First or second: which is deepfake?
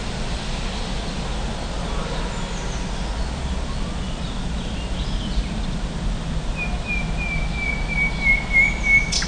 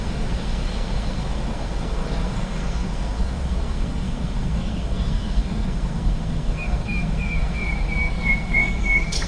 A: second